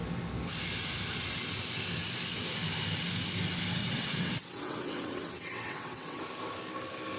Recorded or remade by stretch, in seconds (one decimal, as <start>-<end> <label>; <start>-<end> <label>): 0.0-3.8 recorded; 3.8-6.2 remade; 6.2-7.2 recorded